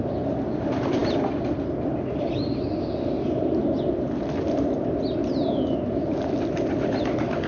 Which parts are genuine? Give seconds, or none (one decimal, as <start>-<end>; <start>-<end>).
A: 0.0-7.5